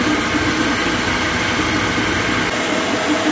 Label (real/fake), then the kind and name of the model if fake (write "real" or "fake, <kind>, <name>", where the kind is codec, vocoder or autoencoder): real